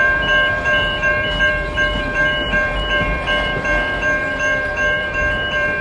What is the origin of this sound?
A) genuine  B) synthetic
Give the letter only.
B